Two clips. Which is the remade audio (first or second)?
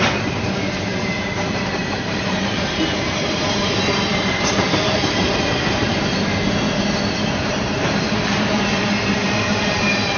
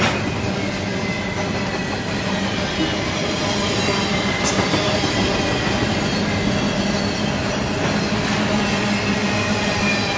first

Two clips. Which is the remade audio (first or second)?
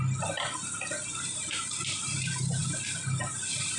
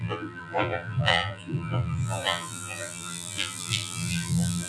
second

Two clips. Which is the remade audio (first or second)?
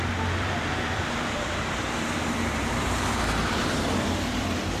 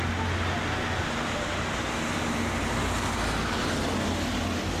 first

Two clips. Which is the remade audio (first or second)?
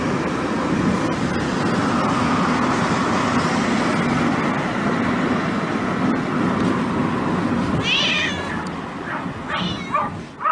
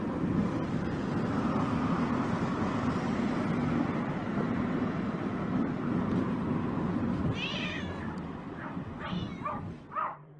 second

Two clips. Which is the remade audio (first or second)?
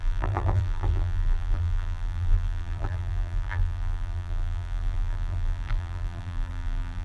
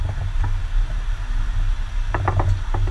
first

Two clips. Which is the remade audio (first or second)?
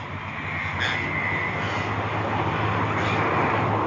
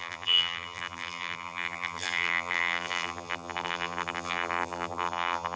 second